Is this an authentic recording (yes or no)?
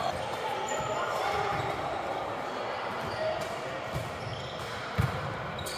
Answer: yes